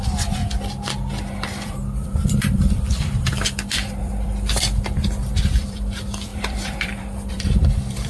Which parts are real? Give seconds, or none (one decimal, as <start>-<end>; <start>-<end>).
0.4-1.1